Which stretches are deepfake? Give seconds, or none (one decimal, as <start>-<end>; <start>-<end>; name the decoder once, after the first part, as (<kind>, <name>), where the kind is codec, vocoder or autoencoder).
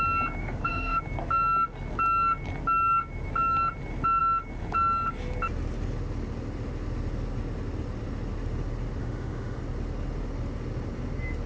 0.4-1.0 (autoencoder, DAC-VAE); 9.0-9.6